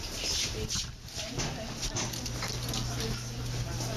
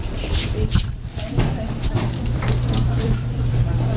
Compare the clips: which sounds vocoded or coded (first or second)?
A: second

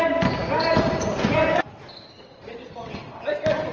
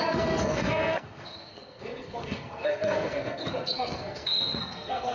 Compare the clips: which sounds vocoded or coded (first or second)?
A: second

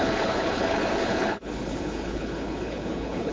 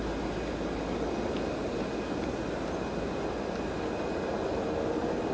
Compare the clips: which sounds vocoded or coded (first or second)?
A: first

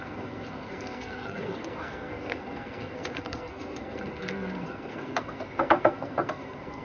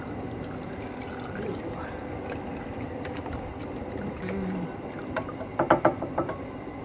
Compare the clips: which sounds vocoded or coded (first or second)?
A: first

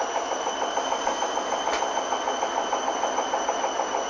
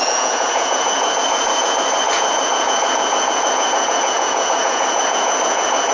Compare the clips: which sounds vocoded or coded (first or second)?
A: second